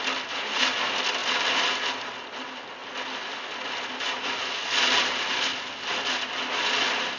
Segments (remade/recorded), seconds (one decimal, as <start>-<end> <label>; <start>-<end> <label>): 0.0-7.2 recorded